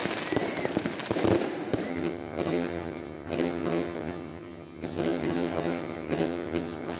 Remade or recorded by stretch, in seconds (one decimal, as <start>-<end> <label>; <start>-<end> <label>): 0.0-1.9 recorded; 1.9-7.0 remade

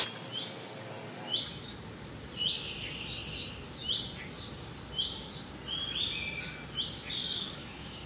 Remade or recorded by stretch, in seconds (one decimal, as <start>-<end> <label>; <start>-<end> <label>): 0.0-7.2 recorded; 7.2-8.1 remade

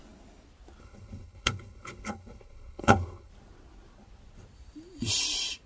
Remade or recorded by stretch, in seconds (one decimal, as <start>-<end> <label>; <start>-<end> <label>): 0.0-0.8 recorded; 0.8-3.3 remade; 3.3-5.7 recorded